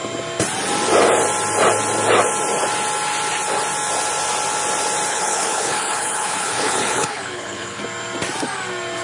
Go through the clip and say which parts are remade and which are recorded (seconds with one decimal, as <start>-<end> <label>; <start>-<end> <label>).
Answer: 0.0-5.1 recorded; 5.1-7.8 remade; 7.8-9.0 recorded